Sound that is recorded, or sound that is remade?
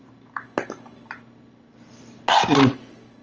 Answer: recorded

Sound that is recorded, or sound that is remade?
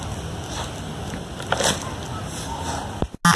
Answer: recorded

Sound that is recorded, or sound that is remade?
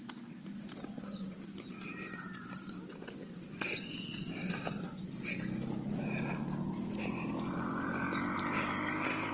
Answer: recorded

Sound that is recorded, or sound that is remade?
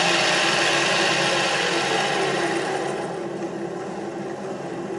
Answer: recorded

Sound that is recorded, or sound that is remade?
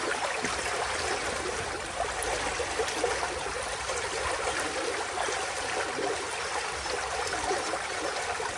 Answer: recorded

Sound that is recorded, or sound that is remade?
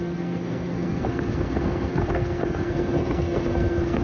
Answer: remade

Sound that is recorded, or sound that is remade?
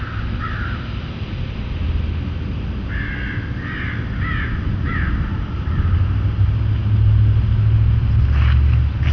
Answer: recorded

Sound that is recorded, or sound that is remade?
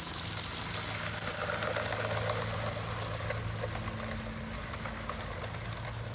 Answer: recorded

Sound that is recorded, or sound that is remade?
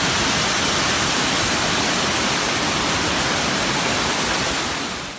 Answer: recorded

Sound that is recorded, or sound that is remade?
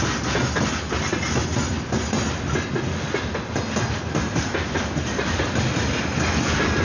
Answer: recorded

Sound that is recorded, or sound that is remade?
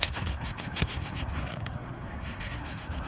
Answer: remade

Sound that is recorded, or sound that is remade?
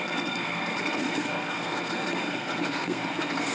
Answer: remade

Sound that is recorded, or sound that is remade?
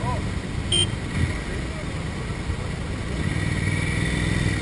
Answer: recorded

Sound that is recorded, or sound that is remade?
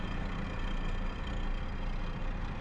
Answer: recorded